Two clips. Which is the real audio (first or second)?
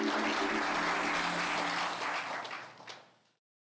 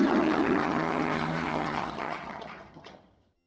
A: first